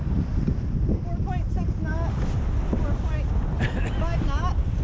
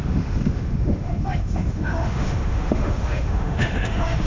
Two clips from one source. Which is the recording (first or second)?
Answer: first